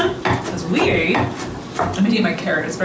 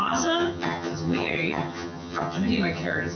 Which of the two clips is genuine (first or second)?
first